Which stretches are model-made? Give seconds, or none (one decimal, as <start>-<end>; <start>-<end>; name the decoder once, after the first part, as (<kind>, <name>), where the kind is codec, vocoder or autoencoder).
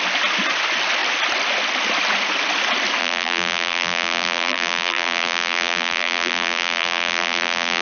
3.0-7.8 (vocoder, BigVGAN v2)